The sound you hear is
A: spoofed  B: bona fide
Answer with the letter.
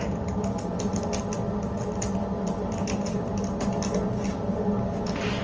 B